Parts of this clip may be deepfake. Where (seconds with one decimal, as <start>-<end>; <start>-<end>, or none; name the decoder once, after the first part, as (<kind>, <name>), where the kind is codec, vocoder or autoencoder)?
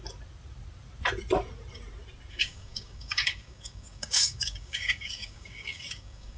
2.3-6.4 (codec, DAC)